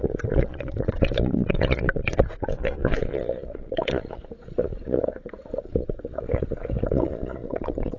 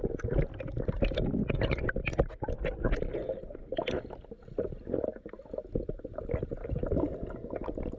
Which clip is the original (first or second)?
second